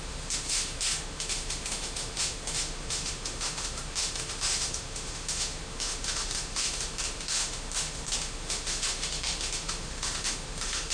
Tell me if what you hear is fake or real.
fake